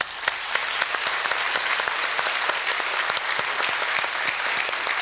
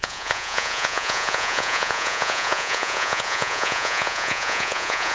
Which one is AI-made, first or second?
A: second